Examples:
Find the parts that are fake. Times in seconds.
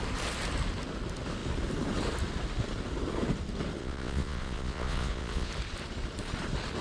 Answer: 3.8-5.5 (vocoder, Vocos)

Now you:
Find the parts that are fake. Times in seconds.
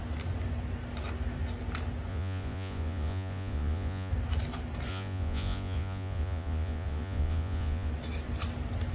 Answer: 2.1-4.1 (vocoder, Vocos); 4.9-7.9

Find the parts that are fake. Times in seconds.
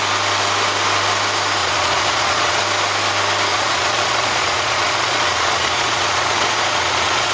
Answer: 1.6-2.6 (vocoder, Vocos); 3.5-7.3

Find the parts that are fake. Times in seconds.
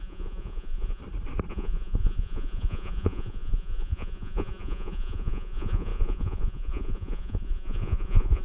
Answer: 0.0-1.0 (vocoder, Vocos); 1.5-8.4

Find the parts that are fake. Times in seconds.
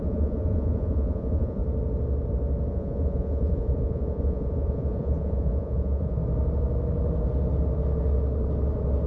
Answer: 0.0-1.6 (vocoder, Vocos); 2.7-6.2